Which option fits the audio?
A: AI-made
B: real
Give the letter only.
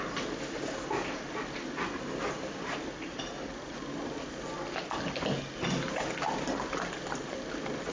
B